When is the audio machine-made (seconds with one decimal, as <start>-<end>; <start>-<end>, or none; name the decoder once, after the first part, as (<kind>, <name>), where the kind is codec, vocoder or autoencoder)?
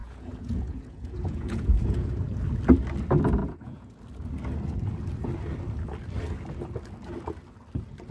0.0-2.2 (vocoder, Vocos); 3.4-4.0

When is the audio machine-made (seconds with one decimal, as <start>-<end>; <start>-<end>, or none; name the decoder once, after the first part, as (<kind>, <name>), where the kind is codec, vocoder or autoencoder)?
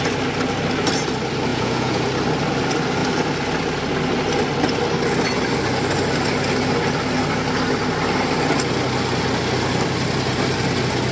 1.5-2.0 (vocoder, Vocos)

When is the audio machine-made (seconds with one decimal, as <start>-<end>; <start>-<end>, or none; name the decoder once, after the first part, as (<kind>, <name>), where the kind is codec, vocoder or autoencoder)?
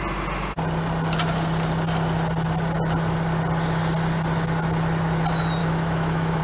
5.6-6.4 (autoencoder, DAC-VAE)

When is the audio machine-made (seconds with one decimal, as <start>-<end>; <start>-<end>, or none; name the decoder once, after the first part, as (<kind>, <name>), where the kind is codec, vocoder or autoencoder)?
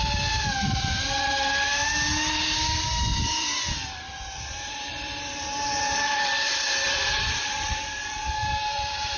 0.0-1.8 (vocoder, BigVGAN v2); 2.6-9.2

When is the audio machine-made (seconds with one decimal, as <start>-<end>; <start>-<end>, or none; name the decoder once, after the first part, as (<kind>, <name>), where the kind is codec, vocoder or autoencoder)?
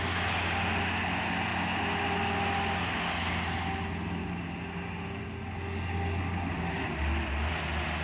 none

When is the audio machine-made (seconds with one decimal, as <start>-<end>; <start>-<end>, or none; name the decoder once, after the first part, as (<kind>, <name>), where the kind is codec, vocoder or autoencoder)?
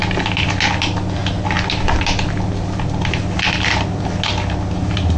none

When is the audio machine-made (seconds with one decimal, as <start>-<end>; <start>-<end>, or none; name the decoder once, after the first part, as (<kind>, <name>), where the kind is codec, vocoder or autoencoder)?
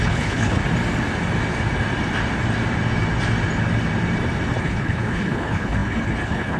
0.0-0.6 (codec, HILCodec); 4.6-6.6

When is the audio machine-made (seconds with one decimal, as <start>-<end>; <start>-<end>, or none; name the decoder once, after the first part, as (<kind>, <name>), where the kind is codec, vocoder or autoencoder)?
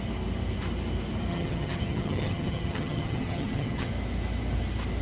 1.3-3.9 (vocoder, HiFi-GAN)